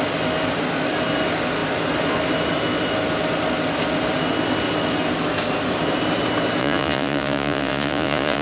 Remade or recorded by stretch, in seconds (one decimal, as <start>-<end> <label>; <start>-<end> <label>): 0.0-6.6 recorded; 6.6-8.4 remade